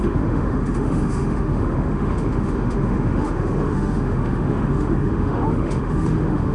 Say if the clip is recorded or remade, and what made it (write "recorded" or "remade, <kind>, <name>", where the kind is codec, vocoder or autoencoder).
remade, autoencoder, DAC-VAE